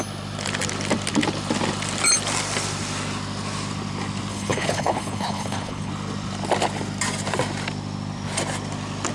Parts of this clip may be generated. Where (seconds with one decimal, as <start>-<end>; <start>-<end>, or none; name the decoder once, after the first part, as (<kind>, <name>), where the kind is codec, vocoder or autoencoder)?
4.3-5.9 (codec, HILCodec)